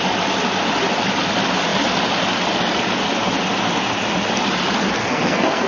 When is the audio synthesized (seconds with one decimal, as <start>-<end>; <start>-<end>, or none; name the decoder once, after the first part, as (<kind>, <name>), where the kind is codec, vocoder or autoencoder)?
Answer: 5.0-5.7 (codec, SNAC)